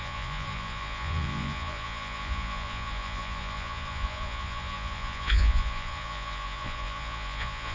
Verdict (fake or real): fake